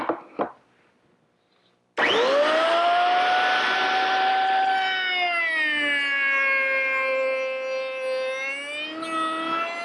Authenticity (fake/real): real